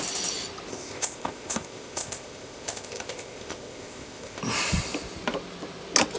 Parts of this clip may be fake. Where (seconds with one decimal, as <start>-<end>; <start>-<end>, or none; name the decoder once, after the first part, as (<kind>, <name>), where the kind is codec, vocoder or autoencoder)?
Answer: 0.7-4.4 (codec, ZipCodec)